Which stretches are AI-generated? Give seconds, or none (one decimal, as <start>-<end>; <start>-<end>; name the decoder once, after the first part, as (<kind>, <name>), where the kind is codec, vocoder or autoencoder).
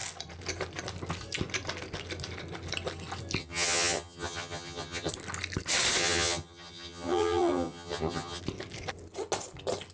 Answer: 3.4-5.1 (vocoder, HiFi-GAN); 6.0-8.4